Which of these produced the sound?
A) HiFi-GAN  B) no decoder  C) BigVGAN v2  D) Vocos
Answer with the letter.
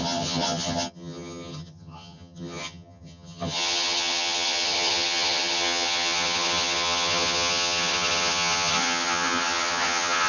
A